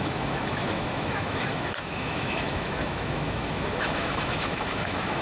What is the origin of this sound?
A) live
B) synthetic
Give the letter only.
B